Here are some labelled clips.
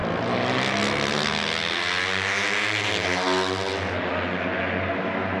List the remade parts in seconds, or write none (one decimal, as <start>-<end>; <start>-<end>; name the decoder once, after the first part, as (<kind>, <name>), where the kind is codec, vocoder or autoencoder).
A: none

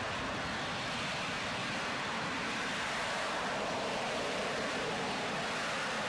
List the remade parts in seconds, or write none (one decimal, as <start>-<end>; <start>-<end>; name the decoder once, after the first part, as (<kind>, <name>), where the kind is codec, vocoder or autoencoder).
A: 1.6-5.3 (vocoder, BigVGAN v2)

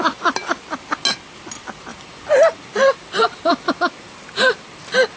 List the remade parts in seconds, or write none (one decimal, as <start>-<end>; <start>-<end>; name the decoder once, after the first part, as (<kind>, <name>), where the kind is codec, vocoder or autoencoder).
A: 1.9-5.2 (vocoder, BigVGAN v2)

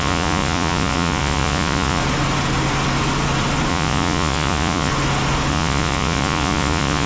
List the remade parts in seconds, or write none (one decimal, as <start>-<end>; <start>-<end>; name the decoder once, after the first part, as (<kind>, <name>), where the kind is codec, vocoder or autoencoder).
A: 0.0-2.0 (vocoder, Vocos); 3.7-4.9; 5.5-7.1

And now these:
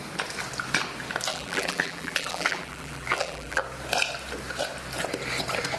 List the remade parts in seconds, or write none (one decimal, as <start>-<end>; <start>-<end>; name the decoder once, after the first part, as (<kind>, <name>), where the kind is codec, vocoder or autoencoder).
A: 1.3-3.6 (vocoder, BigVGAN v2)